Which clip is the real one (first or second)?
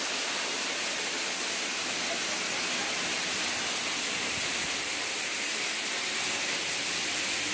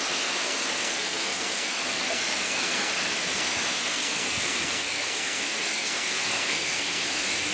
first